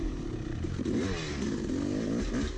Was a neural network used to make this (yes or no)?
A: no